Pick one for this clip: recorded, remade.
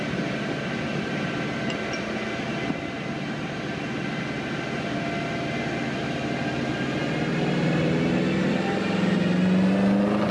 recorded